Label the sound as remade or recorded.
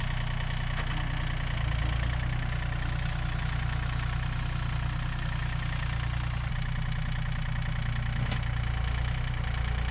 recorded